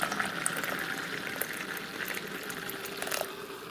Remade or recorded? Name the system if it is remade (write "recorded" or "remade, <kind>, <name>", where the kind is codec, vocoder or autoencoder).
recorded